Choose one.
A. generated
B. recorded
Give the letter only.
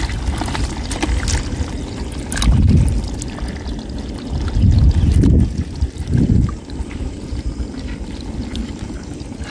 B